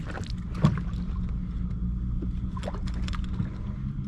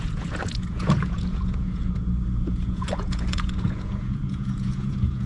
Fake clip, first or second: second